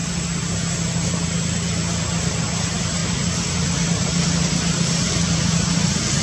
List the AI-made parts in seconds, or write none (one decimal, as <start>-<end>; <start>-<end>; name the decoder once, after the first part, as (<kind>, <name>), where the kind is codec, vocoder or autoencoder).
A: none